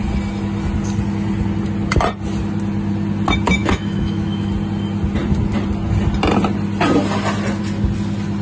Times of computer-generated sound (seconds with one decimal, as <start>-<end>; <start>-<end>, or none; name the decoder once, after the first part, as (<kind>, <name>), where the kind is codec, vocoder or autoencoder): 3.6-4.5 (autoencoder, DAC-VAE)